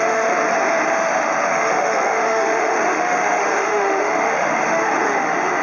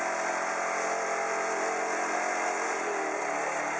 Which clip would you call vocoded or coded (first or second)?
first